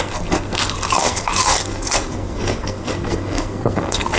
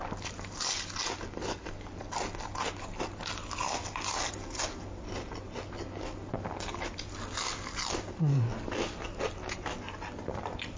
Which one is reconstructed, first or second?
first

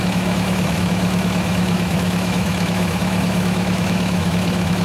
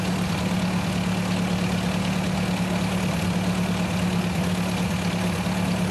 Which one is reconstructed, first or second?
first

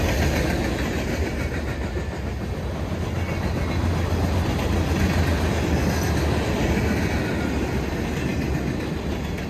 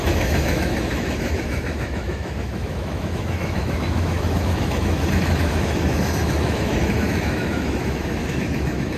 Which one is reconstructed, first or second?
second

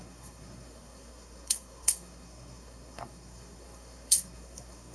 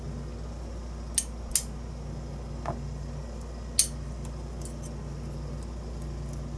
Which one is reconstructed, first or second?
first